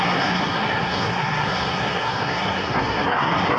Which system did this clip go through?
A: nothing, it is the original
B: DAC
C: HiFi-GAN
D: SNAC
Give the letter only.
D